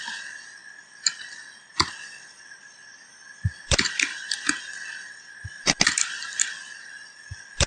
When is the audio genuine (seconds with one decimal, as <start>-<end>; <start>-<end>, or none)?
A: 0.0-7.7